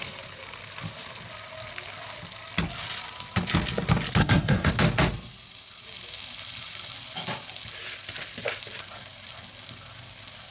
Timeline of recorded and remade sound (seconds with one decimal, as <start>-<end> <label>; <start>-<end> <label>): 0.0-4.2 recorded; 4.2-4.7 remade; 4.7-10.5 recorded